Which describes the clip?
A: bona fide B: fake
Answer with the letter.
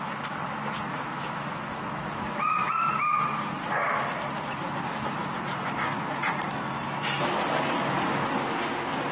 A